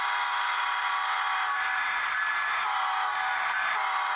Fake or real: real